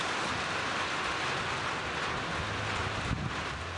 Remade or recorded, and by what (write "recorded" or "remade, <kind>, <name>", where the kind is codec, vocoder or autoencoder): recorded